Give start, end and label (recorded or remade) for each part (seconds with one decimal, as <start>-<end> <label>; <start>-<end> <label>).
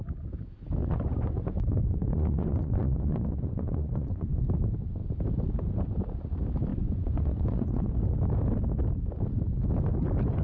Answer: 0.0-0.8 recorded; 0.8-4.4 remade; 4.4-6.7 recorded; 6.7-7.9 remade; 7.9-10.4 recorded